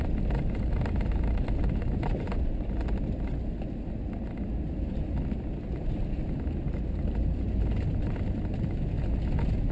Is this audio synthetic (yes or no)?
no